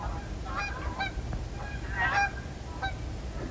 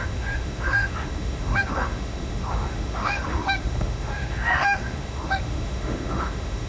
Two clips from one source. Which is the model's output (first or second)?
second